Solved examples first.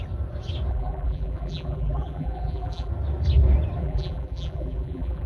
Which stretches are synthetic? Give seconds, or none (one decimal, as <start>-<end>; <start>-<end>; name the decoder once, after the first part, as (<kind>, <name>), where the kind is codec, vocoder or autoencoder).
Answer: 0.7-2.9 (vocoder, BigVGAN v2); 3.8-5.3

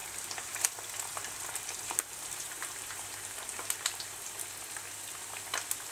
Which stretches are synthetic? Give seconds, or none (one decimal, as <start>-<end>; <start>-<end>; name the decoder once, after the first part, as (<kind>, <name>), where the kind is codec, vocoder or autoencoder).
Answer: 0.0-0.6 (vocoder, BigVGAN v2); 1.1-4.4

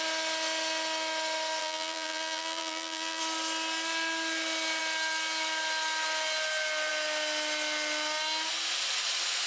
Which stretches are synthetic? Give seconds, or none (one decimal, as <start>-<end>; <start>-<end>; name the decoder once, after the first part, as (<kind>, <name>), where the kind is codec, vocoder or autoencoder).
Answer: 1.6-3.2 (vocoder, BigVGAN v2)

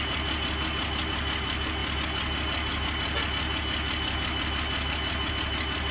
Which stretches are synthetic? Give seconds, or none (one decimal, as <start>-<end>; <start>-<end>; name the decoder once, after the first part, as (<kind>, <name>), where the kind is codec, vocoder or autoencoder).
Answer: none